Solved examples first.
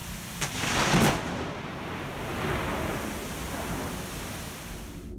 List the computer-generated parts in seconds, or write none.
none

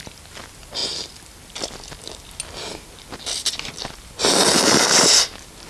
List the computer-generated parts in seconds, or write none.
none